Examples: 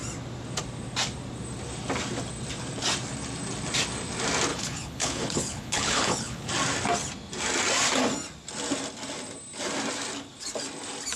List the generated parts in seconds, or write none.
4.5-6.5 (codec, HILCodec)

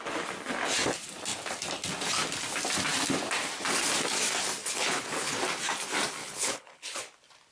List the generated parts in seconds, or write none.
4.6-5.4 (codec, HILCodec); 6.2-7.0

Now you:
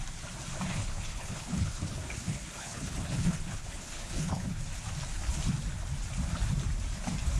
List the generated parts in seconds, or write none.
0.7-4.6 (codec, HILCodec)

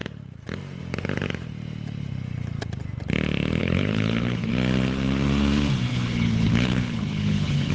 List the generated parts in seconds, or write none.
3.6-4.5 (codec, HILCodec); 5.9-7.7